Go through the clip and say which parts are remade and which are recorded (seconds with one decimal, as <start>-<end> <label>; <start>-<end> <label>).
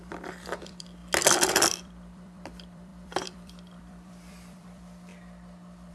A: 0.0-1.0 remade; 1.0-1.5 recorded; 1.5-5.1 remade; 5.1-5.9 recorded